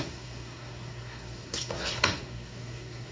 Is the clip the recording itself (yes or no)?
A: no